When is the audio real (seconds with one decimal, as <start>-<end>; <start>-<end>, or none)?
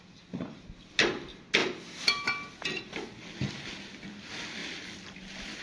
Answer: 0.0-5.6